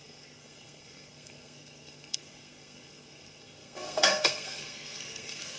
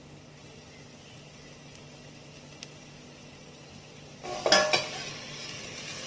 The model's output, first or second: first